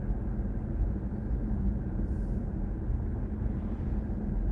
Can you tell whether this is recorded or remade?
recorded